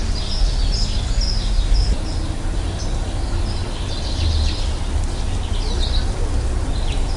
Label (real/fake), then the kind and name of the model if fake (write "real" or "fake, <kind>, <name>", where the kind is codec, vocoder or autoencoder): real